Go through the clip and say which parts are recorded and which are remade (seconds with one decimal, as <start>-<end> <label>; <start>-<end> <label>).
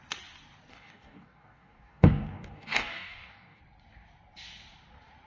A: 0.0-0.7 recorded; 0.7-3.6 remade; 3.6-5.3 recorded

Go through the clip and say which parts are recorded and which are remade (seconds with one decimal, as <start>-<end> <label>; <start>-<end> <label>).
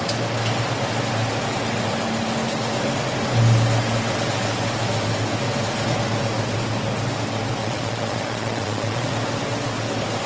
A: 0.0-7.6 recorded; 7.6-9.1 remade; 9.1-10.3 recorded